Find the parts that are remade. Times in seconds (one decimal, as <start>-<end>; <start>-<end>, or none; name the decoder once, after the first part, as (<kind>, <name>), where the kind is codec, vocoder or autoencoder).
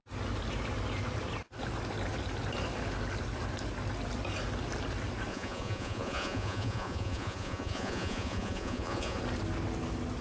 5.3-9.2 (vocoder, Vocos)